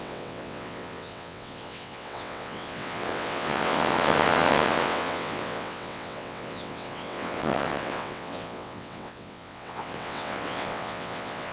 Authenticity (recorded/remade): remade